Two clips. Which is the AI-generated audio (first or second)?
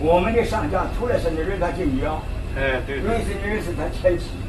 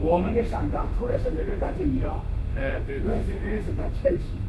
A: second